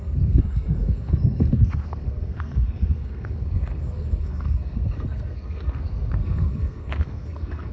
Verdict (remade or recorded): remade